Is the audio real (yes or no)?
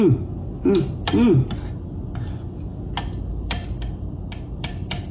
yes